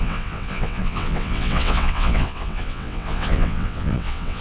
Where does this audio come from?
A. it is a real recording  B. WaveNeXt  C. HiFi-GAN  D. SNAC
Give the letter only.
B